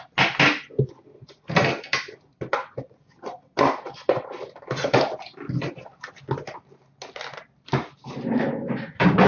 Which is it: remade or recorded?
recorded